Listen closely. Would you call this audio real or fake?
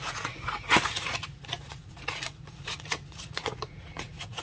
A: fake